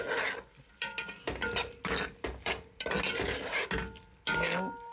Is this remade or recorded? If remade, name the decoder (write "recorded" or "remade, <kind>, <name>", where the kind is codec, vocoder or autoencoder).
recorded